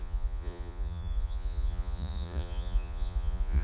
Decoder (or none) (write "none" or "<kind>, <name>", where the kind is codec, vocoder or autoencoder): vocoder, Vocos